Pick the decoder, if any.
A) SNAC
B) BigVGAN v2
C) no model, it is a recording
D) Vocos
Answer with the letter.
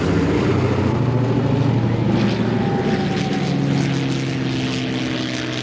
C